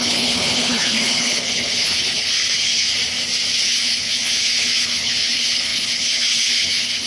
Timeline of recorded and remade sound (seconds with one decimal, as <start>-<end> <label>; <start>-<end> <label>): 0.0-2.9 remade; 2.9-3.6 recorded; 3.6-7.1 remade